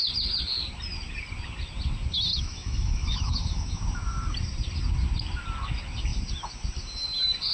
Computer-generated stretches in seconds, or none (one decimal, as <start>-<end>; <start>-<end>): 2.3-3.8